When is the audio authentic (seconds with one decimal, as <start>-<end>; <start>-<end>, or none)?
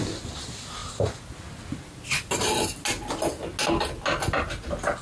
0.0-5.0